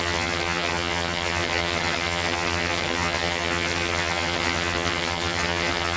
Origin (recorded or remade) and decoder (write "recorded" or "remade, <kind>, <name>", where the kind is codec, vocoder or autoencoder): remade, vocoder, HiFi-GAN